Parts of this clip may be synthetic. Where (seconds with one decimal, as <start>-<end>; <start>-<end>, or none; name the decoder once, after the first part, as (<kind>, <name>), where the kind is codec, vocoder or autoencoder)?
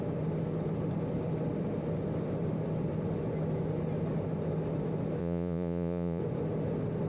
5.2-6.2 (vocoder, Vocos)